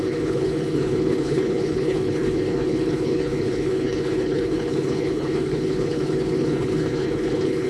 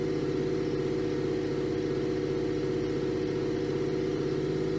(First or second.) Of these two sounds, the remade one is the first